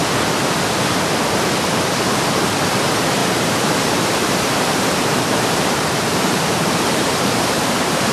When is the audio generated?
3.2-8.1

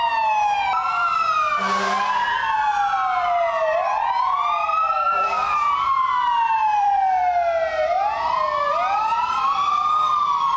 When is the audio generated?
0.0-7.2; 8.7-10.6

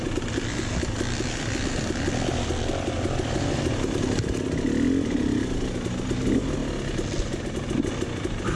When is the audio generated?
none